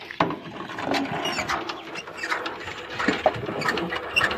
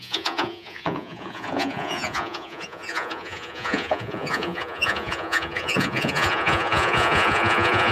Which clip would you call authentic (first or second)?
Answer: first